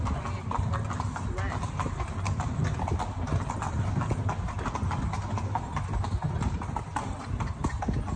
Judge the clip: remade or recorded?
recorded